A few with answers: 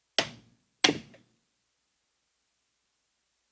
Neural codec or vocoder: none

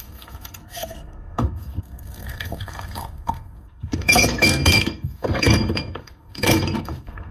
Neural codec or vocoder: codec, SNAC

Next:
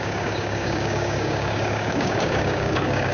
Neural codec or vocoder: codec, DAC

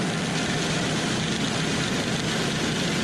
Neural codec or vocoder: none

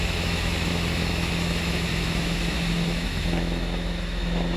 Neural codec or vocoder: autoencoder, DAC-VAE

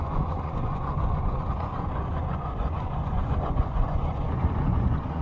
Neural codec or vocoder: vocoder, Vocos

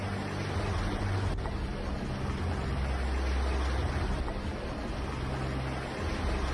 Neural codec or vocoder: none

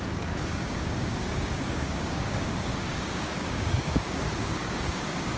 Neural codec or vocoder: codec, DAC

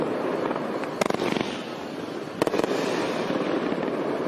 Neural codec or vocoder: none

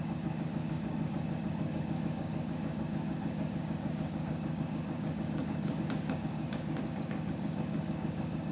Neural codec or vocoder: codec, DAC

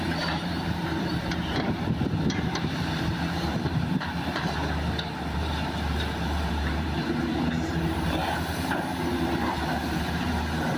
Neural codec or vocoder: vocoder, BigVGAN v2